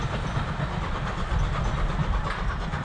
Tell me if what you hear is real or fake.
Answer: real